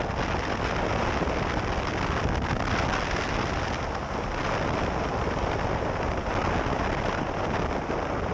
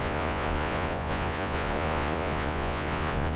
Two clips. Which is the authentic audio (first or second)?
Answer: first